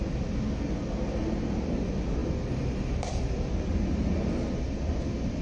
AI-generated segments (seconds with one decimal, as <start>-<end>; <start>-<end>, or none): none